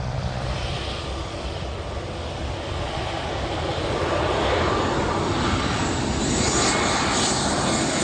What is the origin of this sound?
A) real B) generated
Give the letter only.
A